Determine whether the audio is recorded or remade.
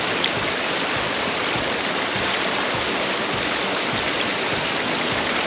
recorded